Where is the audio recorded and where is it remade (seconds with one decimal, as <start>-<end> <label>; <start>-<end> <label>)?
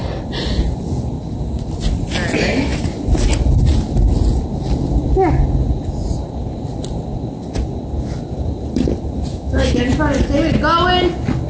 0.0-9.3 recorded; 9.3-9.8 remade; 9.8-11.5 recorded